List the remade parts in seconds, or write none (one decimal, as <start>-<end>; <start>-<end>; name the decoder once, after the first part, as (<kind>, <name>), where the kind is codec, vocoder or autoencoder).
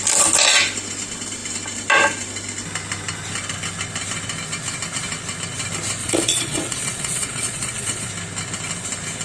6.0-8.1 (vocoder, Vocos)